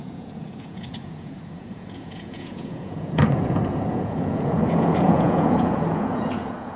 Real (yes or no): no